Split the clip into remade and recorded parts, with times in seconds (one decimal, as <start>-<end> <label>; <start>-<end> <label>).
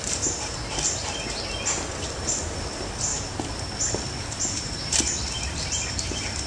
0.0-0.6 remade; 0.6-2.4 recorded; 2.4-3.1 remade; 3.1-4.3 recorded; 4.3-6.5 remade